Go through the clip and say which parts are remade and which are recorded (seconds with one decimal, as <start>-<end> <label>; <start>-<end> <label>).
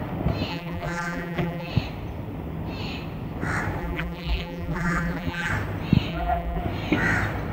0.0-0.5 recorded; 0.5-1.7 remade; 1.7-3.8 recorded; 3.8-5.5 remade; 5.5-6.1 recorded; 6.1-6.6 remade; 6.6-7.5 recorded